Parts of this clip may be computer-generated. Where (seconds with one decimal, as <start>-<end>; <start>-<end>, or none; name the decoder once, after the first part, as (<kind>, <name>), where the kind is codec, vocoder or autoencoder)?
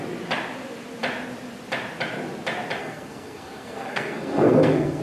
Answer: 2.8-5.0 (codec, SNAC)